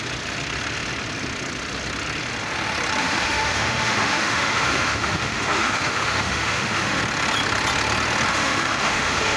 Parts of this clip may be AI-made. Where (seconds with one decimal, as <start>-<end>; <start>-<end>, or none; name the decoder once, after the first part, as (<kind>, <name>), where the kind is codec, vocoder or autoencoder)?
3.0-7.0 (autoencoder, DAC-VAE); 8.3-9.4